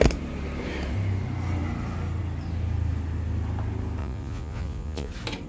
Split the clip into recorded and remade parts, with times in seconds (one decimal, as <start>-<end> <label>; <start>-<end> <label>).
0.0-4.0 recorded; 4.0-5.1 remade; 5.1-5.5 recorded